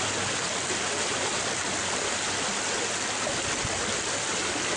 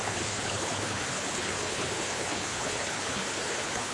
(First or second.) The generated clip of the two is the second